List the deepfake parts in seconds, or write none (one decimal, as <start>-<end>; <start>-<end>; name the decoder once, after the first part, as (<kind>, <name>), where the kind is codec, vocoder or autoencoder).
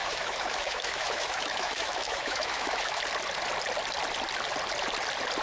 0.0-3.0 (autoencoder, DAC-VAE)